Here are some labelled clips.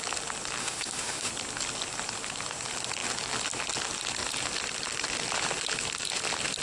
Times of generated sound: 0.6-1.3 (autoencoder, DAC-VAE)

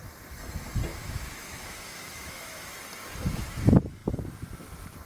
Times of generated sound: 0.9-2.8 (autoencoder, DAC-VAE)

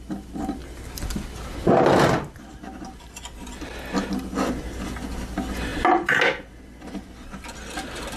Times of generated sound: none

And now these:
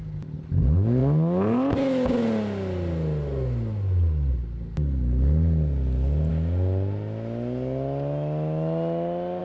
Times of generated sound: none

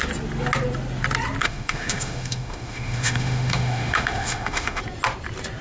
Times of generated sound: 1.4-4.8 (autoencoder, DAC-VAE)